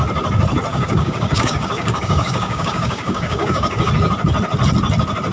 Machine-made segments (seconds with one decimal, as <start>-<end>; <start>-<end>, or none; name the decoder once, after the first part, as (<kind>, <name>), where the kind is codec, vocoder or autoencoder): 0.7-3.9 (codec, DAC)